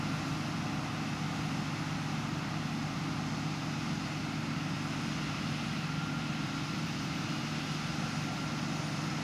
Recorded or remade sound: recorded